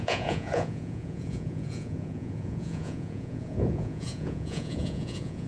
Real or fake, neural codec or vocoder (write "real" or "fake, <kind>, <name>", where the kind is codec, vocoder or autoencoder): fake, vocoder, Vocos